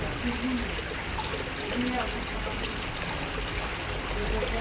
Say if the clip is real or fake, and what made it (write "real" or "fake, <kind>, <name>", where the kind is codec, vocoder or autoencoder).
real